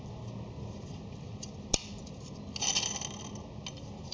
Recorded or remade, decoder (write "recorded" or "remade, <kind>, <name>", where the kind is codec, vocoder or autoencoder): recorded